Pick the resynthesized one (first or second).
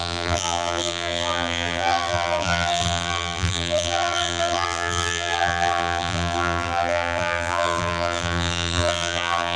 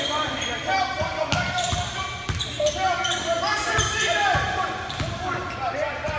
first